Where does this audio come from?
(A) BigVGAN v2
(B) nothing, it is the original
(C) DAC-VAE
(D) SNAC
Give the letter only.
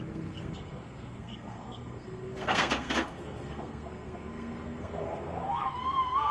D